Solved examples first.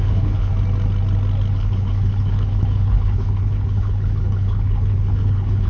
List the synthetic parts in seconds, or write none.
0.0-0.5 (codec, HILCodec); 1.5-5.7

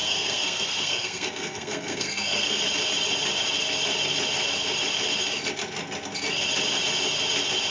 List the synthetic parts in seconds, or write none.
0.0-2.6 (codec, SNAC)

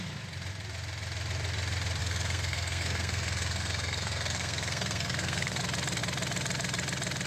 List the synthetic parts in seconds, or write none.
2.0-5.6 (codec, SNAC)

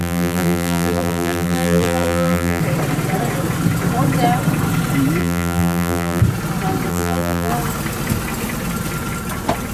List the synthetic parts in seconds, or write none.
0.0-2.6 (vocoder, BigVGAN v2); 5.2-6.2; 6.9-7.5

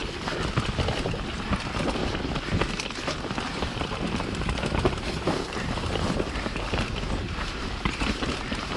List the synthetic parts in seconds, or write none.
1.3-2.0 (vocoder, BigVGAN v2); 3.7-8.8

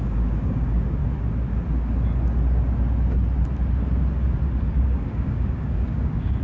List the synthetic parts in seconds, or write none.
0.0-1.0 (codec, DAC); 4.7-6.4

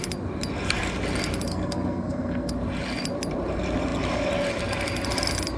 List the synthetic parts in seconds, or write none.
1.5-2.5 (codec, SNAC)